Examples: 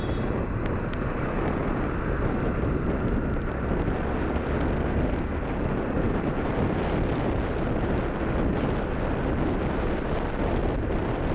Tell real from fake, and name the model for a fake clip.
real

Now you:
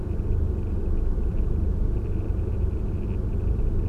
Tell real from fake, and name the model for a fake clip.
real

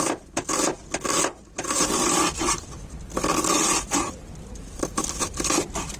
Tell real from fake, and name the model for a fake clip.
real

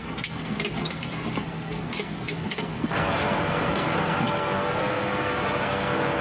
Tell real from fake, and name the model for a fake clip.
fake, codec, SNAC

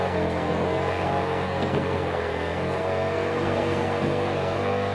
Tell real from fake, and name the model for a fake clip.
fake, codec, SNAC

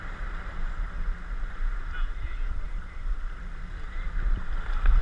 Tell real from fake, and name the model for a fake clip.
real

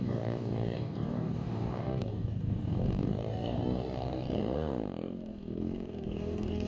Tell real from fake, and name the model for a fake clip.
fake, codec, DAC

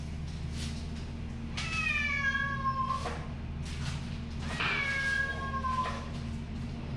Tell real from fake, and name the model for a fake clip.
real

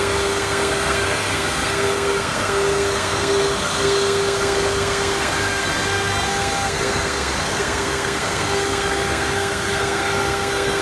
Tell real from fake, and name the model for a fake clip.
fake, codec, SNAC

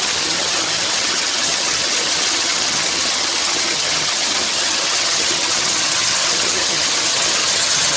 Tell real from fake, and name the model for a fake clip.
fake, vocoder, HiFi-GAN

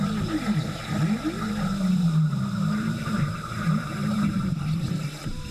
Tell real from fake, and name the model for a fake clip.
fake, vocoder, BigVGAN v2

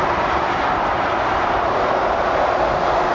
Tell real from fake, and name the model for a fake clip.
real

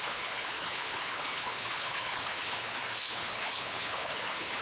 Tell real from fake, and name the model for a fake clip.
fake, codec, HILCodec